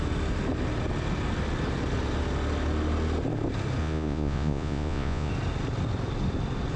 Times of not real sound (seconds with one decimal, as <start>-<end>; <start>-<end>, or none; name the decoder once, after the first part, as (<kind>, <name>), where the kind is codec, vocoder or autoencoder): 3.8-5.3 (vocoder, Vocos)